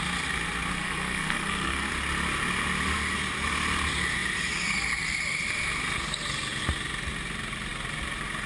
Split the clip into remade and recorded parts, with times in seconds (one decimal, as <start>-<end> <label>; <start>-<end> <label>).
0.0-0.7 recorded; 0.7-1.9 remade; 1.9-8.5 recorded

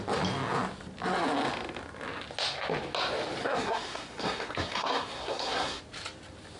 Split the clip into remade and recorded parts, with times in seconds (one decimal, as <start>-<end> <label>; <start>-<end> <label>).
0.0-3.4 recorded; 3.4-5.8 remade; 5.8-6.6 recorded

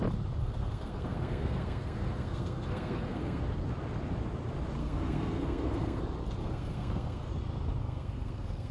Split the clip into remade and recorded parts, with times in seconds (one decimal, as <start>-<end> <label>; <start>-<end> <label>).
0.0-0.4 recorded; 0.4-3.4 remade; 3.4-4.8 recorded; 4.8-6.0 remade; 6.0-6.4 recorded; 6.4-7.3 remade; 7.3-7.8 recorded; 7.8-8.7 remade

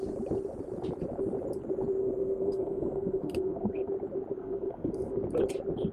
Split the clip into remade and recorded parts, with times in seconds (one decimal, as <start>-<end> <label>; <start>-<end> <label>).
0.0-2.0 recorded; 2.0-3.9 remade; 3.9-4.4 recorded; 4.4-5.2 remade; 5.2-5.9 recorded

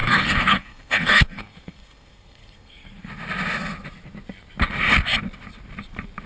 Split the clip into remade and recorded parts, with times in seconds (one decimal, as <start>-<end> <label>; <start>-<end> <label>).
0.0-3.1 remade; 3.1-6.3 recorded

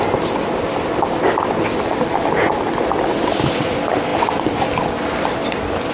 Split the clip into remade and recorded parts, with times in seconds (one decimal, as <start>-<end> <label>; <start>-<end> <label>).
0.0-5.9 recorded

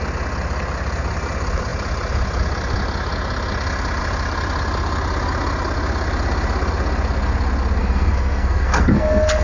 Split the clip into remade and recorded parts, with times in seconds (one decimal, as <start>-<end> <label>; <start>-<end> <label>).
0.0-7.8 recorded; 7.8-9.4 remade

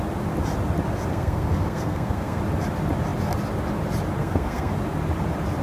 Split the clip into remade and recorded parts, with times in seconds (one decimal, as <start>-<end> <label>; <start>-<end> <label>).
0.0-1.1 recorded; 1.1-2.4 remade; 2.4-4.2 recorded; 4.2-4.7 remade; 4.7-5.6 recorded